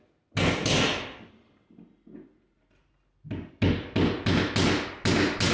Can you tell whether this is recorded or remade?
recorded